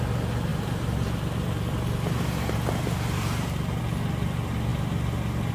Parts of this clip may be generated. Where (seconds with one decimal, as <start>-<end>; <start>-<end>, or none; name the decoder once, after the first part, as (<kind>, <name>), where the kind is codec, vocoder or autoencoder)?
0.5-3.8 (vocoder, BigVGAN v2)